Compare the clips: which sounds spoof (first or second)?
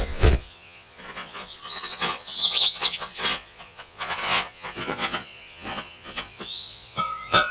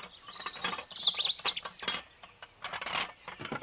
first